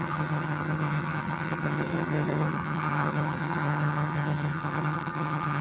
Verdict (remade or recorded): remade